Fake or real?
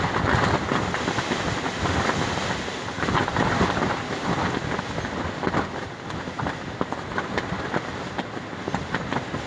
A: real